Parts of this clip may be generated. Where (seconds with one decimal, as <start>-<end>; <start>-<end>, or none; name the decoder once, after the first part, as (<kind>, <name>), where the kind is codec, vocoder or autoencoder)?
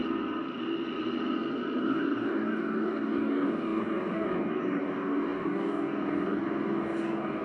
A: 1.8-7.4 (codec, DAC)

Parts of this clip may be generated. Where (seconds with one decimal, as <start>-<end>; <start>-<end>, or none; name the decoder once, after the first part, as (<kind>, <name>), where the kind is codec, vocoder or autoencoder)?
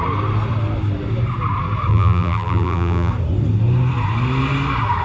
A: 1.9-3.1 (vocoder, BigVGAN v2)